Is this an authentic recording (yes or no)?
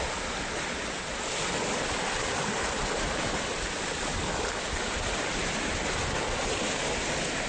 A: yes